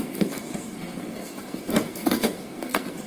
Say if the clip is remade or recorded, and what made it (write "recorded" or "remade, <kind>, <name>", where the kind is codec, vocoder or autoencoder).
remade, codec, SNAC